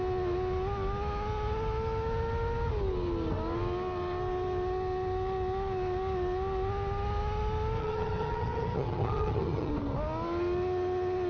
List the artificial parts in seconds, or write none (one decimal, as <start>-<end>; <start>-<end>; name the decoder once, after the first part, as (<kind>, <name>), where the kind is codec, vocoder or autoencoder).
7.8-9.7 (vocoder, HiFi-GAN)